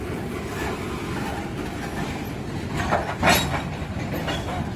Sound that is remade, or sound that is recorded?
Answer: recorded